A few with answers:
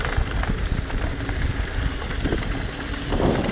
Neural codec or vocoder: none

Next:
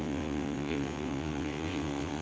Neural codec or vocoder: vocoder, WaveNeXt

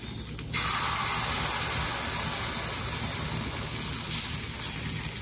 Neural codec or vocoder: none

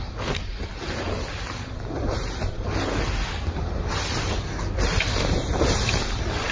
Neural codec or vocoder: none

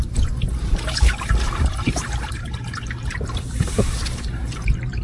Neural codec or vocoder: vocoder, BigVGAN v2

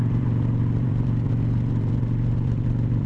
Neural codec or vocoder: vocoder, BigVGAN v2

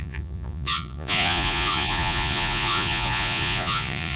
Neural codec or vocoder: vocoder, Vocos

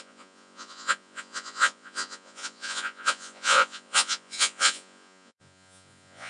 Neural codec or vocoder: vocoder, Vocos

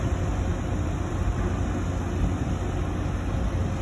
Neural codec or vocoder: none